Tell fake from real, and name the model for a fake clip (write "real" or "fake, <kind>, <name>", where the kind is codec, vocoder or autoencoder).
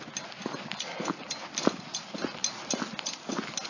real